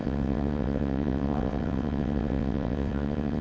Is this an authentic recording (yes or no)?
no